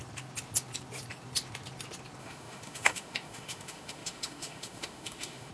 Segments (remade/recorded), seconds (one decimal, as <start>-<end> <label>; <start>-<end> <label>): 0.0-2.2 recorded; 2.2-5.5 remade